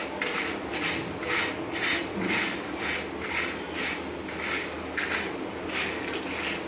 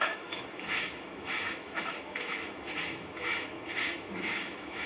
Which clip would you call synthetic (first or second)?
second